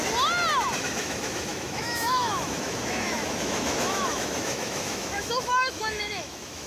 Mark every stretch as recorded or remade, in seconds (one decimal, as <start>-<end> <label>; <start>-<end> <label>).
0.0-0.8 recorded; 0.8-6.7 remade